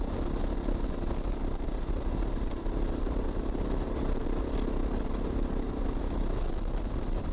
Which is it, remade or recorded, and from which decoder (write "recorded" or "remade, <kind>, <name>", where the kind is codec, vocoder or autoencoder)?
recorded